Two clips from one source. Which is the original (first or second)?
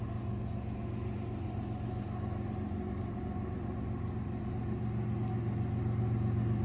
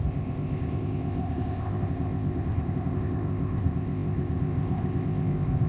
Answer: first